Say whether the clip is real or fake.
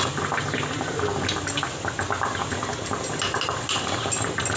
real